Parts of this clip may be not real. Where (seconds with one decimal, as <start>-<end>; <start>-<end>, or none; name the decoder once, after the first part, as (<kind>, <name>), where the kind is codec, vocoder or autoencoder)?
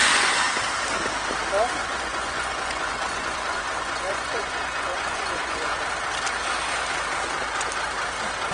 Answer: 0.0-0.5 (vocoder, Vocos); 1.8-5.8